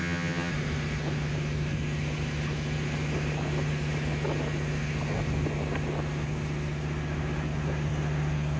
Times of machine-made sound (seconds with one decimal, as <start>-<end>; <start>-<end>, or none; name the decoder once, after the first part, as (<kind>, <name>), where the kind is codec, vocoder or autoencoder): 0.0-0.5 (vocoder, HiFi-GAN)